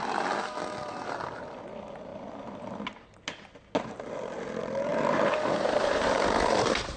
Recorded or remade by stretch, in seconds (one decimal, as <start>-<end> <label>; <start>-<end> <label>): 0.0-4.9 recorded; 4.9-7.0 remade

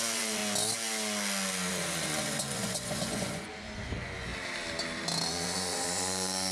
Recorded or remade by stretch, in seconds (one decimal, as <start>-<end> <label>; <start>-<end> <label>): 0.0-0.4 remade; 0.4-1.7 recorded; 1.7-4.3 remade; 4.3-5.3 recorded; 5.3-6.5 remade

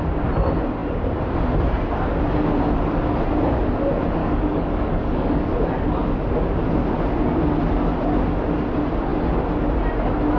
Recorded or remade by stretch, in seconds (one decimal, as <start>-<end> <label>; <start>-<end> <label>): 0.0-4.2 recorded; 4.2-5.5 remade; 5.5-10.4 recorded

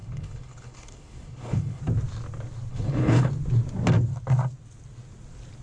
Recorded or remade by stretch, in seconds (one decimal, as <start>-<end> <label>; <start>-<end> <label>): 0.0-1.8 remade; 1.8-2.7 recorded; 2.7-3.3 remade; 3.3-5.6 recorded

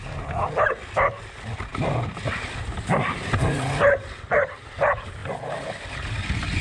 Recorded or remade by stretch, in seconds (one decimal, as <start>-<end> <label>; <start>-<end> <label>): 0.0-5.2 recorded; 5.2-6.6 remade

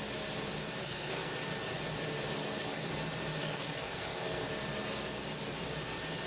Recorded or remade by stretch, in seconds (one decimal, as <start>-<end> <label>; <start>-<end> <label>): 0.0-0.8 recorded; 0.8-1.3 remade; 1.3-2.4 recorded; 2.4-2.9 remade; 2.9-3.4 recorded; 3.4-4.5 remade; 4.5-6.3 recorded

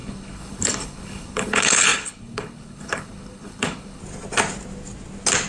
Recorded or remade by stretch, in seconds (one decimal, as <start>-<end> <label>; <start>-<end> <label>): 0.0-4.0 remade; 4.0-5.5 recorded

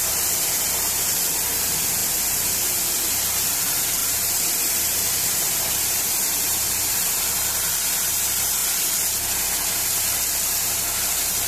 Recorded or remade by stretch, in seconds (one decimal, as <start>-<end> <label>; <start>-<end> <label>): 0.0-8.6 remade; 8.6-11.1 recorded; 11.1-11.5 remade